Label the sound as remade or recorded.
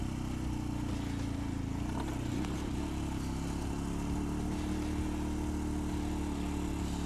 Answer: recorded